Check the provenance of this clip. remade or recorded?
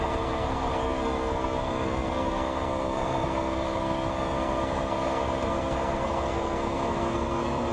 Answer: remade